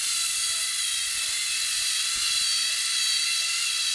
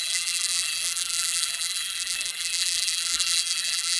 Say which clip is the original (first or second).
first